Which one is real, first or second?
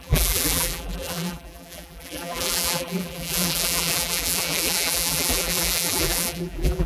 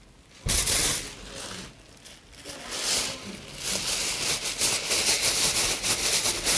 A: second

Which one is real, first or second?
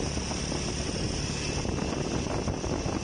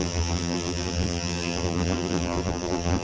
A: first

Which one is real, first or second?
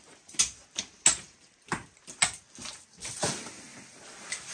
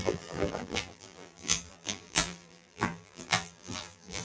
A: first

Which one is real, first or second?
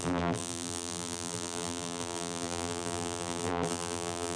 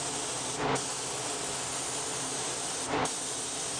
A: second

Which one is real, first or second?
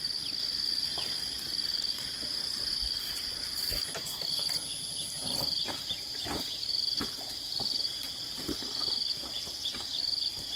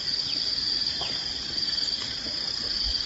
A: first